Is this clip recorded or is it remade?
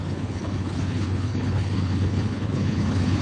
remade